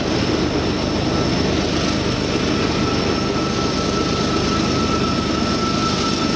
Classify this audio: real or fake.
real